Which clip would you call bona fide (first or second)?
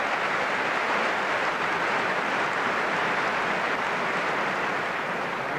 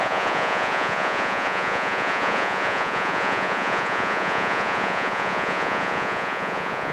first